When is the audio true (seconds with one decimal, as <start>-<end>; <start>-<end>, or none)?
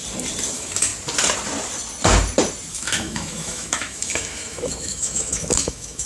0.0-0.5; 0.9-2.7